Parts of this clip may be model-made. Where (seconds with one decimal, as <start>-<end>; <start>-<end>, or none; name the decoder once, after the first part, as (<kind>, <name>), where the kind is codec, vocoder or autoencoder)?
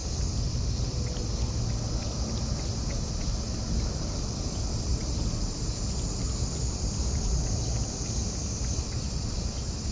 none